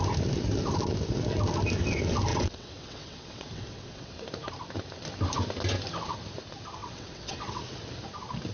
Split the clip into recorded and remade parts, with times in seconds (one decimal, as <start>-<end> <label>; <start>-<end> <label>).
0.0-2.3 recorded; 2.3-4.2 remade; 4.2-6.8 recorded; 6.8-7.6 remade; 7.6-8.5 recorded